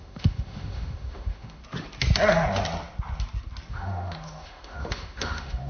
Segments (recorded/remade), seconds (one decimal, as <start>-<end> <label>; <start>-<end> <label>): 0.0-1.6 remade; 1.6-3.7 recorded; 3.7-5.7 remade